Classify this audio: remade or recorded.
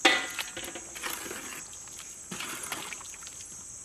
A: recorded